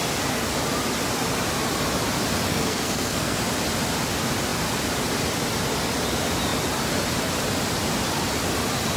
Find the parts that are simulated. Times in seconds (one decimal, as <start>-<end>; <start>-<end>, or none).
2.5-3.4